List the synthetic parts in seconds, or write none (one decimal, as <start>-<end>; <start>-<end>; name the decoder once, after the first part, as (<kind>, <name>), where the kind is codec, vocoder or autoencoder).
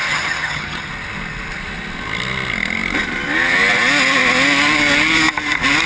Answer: 0.0-0.9 (vocoder, HiFi-GAN)